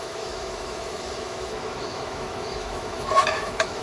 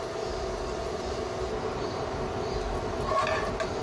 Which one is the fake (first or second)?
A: first